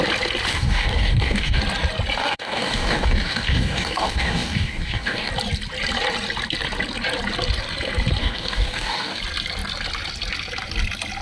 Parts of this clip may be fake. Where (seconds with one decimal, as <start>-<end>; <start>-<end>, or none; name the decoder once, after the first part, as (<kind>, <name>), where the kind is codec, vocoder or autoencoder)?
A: 0.5-1.6 (codec, DAC); 2.2-5.3; 8.2-9.2